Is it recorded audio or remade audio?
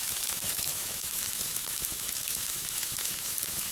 remade